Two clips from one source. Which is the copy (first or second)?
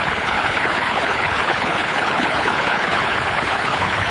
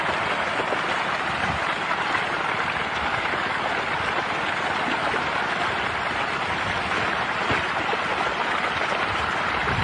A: first